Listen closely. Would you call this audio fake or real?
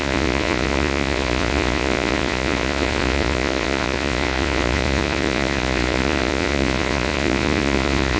fake